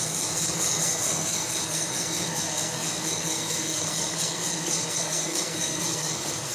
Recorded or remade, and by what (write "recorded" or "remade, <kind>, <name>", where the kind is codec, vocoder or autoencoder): remade, codec, SNAC